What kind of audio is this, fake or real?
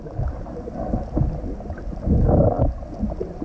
real